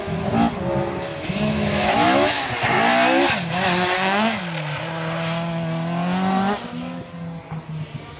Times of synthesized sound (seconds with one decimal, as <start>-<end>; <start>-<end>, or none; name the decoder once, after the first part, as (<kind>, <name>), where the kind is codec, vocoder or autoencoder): 1.1-2.5 (autoencoder, DAC-VAE)